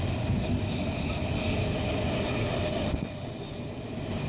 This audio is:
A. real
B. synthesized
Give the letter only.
A